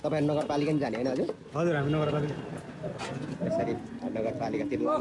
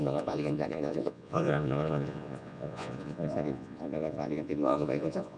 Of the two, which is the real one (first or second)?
first